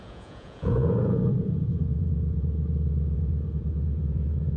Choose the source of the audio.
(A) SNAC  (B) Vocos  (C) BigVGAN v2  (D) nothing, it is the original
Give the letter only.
B